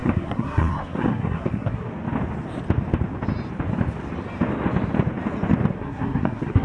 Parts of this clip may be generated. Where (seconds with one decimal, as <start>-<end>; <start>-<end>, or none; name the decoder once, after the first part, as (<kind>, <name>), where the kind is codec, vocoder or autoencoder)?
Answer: 0.0-1.9 (codec, SNAC); 5.7-6.6